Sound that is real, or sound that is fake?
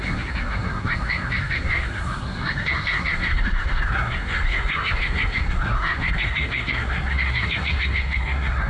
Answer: fake